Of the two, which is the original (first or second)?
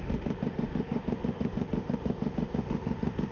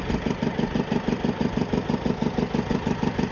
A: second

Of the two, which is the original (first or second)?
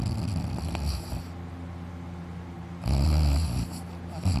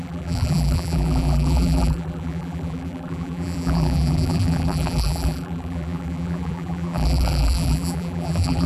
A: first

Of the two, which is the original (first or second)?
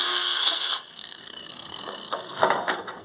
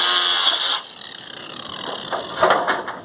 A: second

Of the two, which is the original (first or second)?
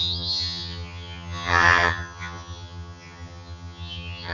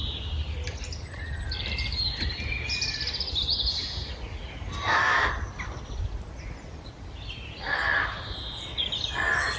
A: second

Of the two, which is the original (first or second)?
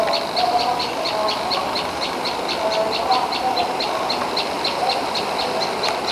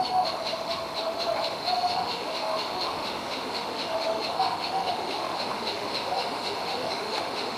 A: first